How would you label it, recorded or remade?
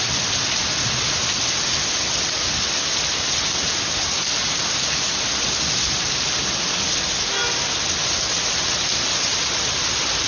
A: recorded